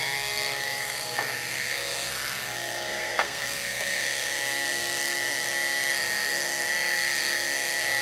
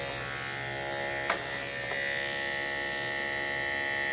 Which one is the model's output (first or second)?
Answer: first